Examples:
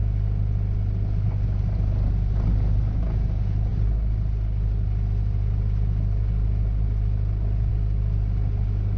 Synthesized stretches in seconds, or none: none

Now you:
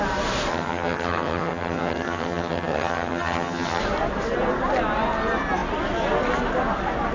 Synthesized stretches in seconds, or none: 0.5-3.8 (vocoder, HiFi-GAN)

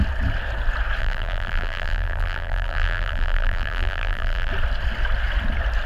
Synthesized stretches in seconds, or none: 1.0-4.5 (vocoder, BigVGAN v2)